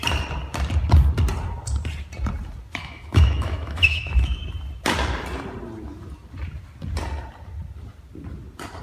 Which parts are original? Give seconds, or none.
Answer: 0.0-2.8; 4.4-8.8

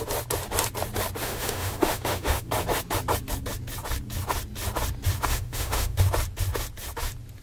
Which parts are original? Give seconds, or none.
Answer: 0.0-1.2; 2.5-5.3; 6.0-7.4

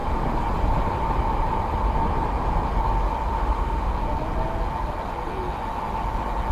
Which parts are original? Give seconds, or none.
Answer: 0.0-3.3; 3.9-6.5

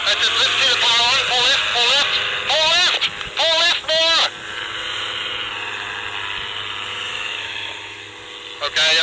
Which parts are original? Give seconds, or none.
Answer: 0.0-6.9; 8.1-9.0

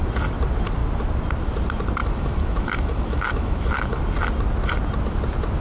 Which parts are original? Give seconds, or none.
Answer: 0.0-2.0; 4.0-5.6